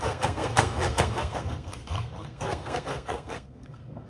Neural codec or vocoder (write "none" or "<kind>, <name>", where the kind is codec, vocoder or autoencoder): codec, SNAC